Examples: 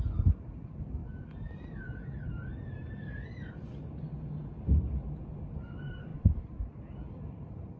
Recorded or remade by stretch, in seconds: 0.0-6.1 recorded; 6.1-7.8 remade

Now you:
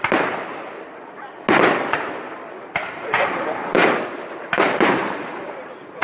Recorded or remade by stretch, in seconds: 0.0-3.2 recorded; 3.2-3.8 remade; 3.8-4.4 recorded; 4.4-6.0 remade